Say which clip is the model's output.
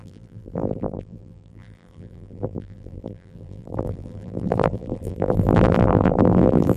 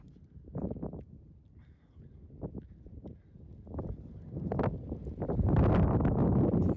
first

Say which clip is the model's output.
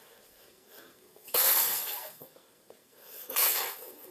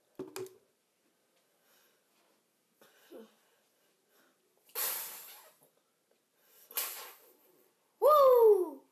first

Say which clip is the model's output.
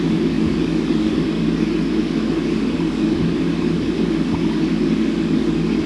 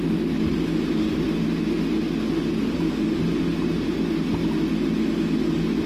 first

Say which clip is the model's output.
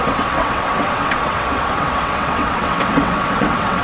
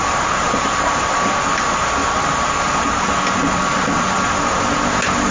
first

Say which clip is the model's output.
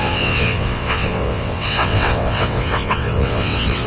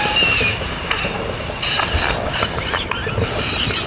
first